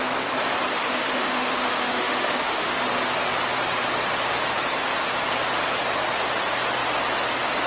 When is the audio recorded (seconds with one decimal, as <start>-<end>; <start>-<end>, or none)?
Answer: 0.0-0.7; 2.8-7.7